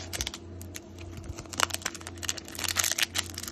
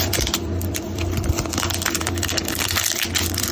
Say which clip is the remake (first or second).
second